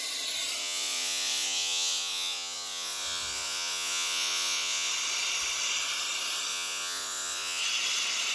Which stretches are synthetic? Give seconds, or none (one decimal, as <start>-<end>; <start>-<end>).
0.6-4.9; 6.5-7.6